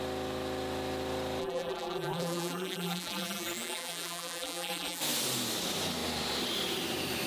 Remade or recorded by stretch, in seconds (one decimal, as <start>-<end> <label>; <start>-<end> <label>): 0.0-1.4 recorded; 1.4-5.0 remade; 5.0-7.3 recorded